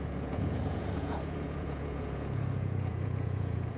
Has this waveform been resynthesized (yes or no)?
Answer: yes